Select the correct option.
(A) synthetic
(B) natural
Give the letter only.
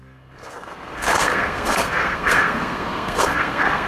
A